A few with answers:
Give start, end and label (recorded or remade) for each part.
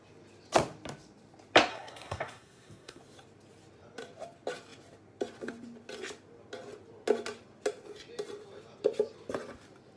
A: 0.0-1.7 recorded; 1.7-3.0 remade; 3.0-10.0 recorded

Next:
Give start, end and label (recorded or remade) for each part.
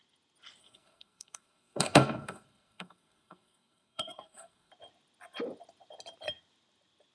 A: 0.0-0.6 recorded; 0.6-4.7 remade; 4.7-7.1 recorded